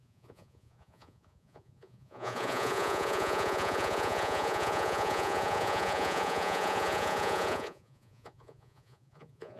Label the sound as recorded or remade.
remade